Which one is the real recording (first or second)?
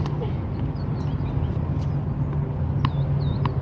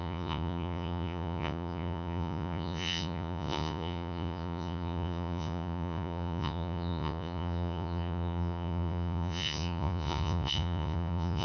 first